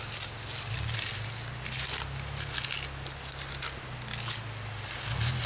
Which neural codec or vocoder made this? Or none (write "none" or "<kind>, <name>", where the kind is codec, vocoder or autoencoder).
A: none